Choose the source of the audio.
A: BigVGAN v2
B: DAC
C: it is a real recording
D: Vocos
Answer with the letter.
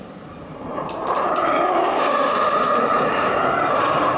A